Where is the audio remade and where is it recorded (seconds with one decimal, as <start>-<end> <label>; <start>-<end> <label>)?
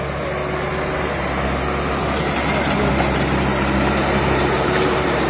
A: 0.0-2.9 recorded; 2.9-5.3 remade